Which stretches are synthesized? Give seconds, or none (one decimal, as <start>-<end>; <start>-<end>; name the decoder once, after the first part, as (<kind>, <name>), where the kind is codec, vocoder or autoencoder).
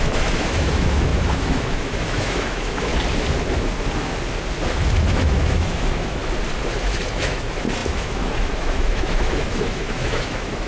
0.0-2.9 (autoencoder, DAC-VAE); 5.0-6.2; 7.1-10.7